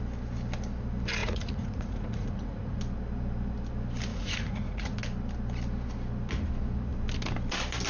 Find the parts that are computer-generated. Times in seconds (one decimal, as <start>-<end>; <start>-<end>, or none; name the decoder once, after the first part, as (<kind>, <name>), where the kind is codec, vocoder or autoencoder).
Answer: 1.2-2.8 (vocoder, Vocos); 4.1-5.0